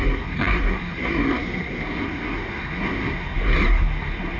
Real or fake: fake